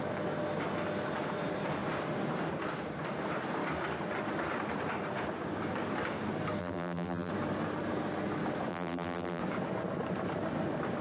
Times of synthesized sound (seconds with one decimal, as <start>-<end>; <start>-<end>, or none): 6.6-7.3; 8.7-9.4